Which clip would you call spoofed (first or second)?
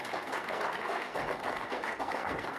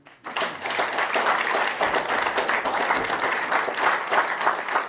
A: first